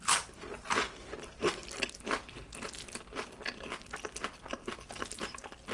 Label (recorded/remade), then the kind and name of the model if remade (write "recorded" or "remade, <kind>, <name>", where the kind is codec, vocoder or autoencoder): recorded